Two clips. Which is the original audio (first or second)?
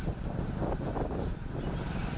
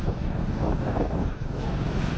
first